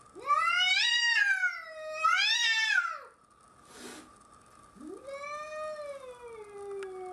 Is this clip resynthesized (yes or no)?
no